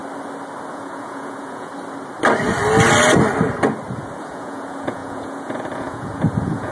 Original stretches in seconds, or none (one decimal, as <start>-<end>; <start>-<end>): 0.0-0.7; 1.7-4.2